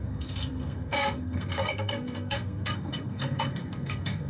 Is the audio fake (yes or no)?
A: yes